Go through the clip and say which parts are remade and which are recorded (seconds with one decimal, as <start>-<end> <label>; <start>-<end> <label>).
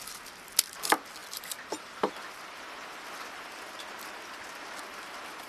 0.0-5.5 recorded